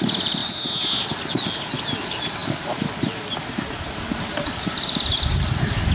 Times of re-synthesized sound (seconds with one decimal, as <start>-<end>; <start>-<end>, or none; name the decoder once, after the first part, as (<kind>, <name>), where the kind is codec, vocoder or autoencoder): none